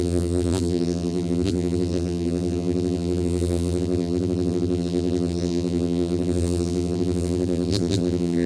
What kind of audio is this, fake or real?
fake